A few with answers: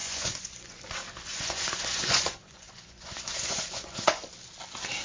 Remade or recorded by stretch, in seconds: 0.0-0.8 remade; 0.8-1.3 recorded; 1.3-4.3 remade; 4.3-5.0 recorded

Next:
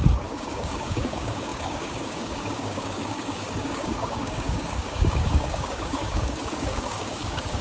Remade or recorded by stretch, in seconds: 0.0-7.6 remade

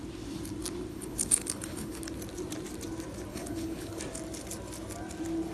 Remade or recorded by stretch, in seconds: 0.0-0.9 recorded; 0.9-2.0 remade; 2.0-3.3 recorded; 3.3-4.0 remade; 4.0-5.5 recorded